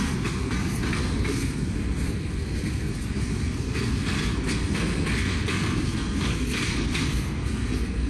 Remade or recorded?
remade